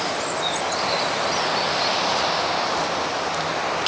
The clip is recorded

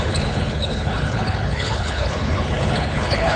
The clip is remade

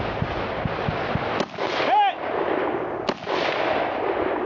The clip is recorded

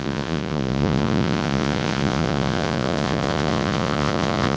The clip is remade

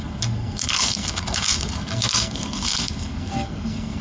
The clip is remade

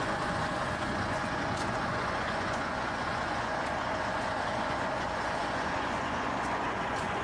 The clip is remade